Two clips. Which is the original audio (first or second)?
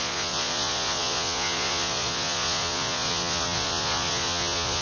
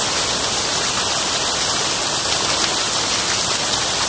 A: second